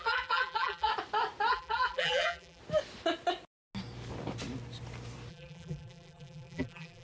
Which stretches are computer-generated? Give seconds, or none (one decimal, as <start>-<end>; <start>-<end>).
0.0-0.9; 1.5-2.6; 5.3-7.0